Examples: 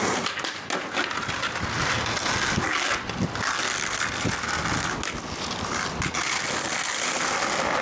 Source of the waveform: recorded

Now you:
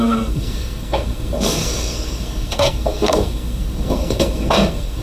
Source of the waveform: remade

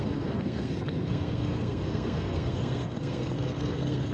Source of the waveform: remade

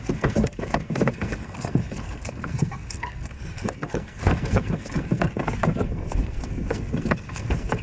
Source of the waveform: remade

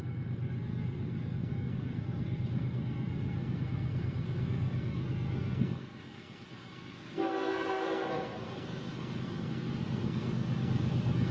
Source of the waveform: remade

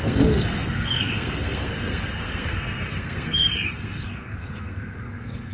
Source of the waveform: remade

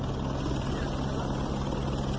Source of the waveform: recorded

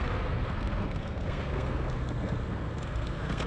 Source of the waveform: remade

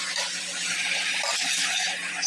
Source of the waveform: recorded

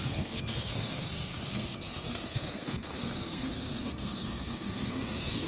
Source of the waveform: remade